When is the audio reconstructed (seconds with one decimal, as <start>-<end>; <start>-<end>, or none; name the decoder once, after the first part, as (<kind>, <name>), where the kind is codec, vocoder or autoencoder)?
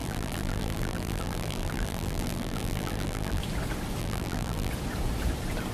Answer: 0.0-3.4 (vocoder, BigVGAN v2); 4.0-4.7